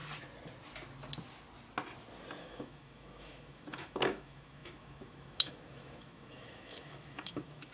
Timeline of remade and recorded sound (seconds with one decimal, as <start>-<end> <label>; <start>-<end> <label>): 0.0-2.4 recorded; 2.4-7.7 remade